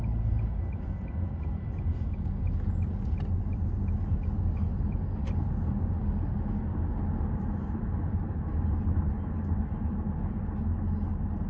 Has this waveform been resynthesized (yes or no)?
no